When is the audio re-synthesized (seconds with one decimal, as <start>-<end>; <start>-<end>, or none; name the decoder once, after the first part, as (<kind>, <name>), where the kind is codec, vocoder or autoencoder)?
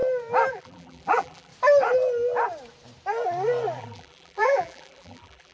0.5-1.5 (vocoder, BigVGAN v2); 3.8-5.5